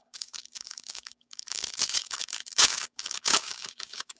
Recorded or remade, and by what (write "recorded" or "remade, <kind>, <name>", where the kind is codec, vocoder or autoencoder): remade, codec, DAC